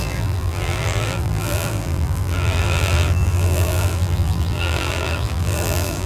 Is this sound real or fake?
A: fake